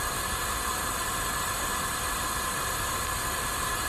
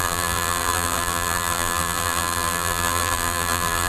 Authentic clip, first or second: first